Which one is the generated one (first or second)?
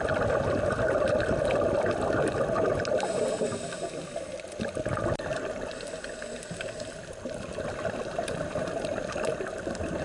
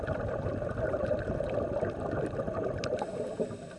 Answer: second